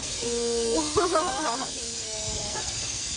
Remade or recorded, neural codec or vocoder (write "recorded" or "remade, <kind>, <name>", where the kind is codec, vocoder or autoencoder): remade, codec, SNAC